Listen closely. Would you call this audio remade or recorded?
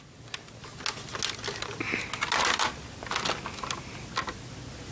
recorded